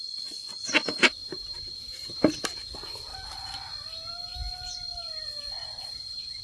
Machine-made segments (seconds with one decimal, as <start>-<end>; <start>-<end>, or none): 1.2-2.3; 5.6-6.4